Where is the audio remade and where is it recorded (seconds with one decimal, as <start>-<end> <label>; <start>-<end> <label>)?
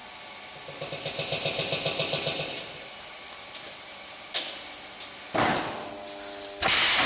0.0-7.1 recorded